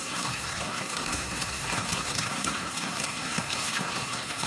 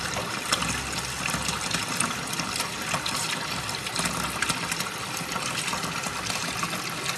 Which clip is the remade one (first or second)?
first